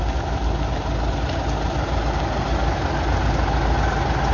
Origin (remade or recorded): recorded